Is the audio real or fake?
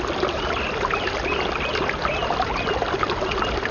real